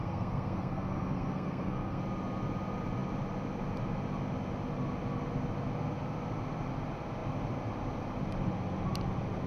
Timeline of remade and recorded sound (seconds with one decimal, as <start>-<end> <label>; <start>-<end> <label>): 0.0-2.0 remade; 2.0-9.5 recorded